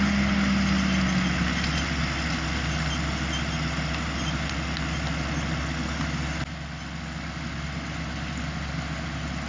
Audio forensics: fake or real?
real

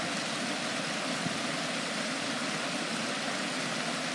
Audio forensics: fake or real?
real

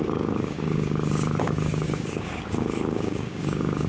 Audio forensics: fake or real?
fake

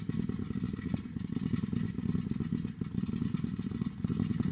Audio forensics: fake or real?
real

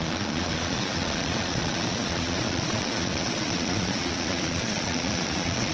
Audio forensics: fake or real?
fake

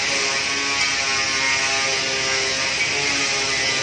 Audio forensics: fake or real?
real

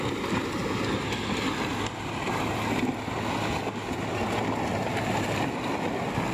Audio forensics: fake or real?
real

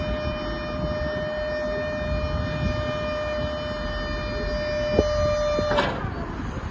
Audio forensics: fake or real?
real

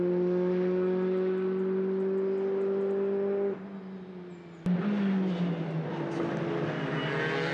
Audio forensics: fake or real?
real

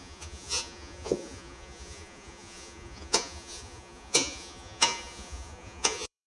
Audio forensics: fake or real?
fake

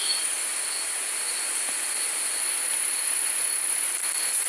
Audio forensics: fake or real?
real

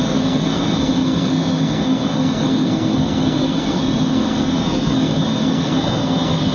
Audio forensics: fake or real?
fake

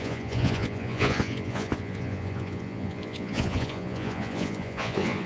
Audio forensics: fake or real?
fake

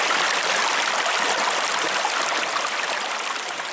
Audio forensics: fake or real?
real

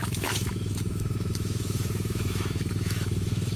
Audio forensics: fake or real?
fake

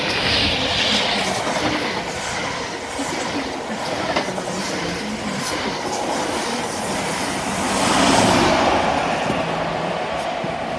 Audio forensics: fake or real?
real